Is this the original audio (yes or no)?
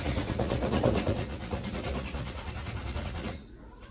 no